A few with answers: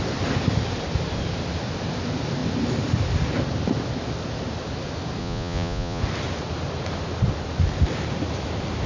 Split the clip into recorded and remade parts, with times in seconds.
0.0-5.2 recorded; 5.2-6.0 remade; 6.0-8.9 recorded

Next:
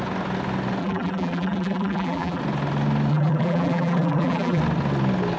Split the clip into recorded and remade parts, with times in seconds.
0.0-0.8 recorded; 0.8-2.4 remade; 2.4-3.1 recorded; 3.1-4.6 remade; 4.6-5.4 recorded

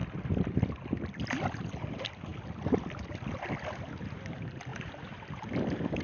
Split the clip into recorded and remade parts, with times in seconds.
0.0-2.3 recorded; 2.3-3.1 remade; 3.1-4.7 recorded; 4.7-6.0 remade

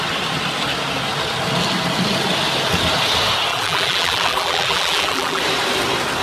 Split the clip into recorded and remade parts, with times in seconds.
0.0-3.5 recorded; 3.5-5.4 remade; 5.4-6.2 recorded